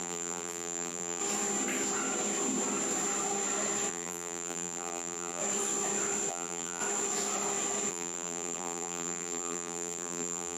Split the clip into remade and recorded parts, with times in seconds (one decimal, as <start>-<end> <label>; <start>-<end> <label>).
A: 0.0-1.2 remade; 1.2-3.9 recorded; 3.9-5.4 remade; 5.4-6.3 recorded; 6.3-6.8 remade; 6.8-7.9 recorded; 7.9-10.6 remade

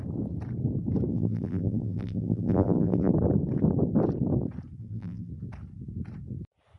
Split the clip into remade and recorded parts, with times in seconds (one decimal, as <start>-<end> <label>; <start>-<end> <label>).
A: 0.0-1.1 recorded; 1.1-3.1 remade; 3.1-4.8 recorded; 4.8-5.3 remade; 5.3-6.8 recorded

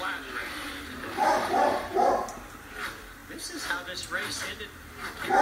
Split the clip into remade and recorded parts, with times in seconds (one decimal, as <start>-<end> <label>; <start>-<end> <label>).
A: 0.0-0.4 recorded; 0.4-2.7 remade; 2.7-5.4 recorded

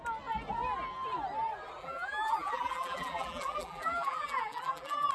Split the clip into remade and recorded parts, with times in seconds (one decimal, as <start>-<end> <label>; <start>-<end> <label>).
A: 0.0-1.8 recorded; 1.8-5.1 remade